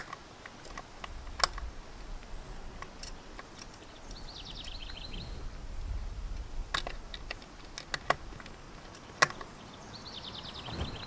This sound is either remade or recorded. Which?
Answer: recorded